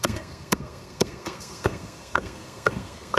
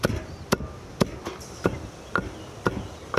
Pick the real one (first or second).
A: second